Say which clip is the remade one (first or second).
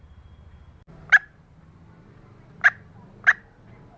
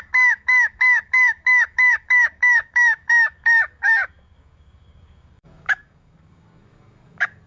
second